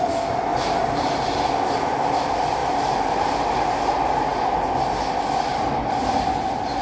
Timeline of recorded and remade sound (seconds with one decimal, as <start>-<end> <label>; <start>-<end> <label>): 0.0-0.5 recorded; 0.5-1.4 remade; 1.4-2.6 recorded; 2.6-3.4 remade; 3.4-6.8 recorded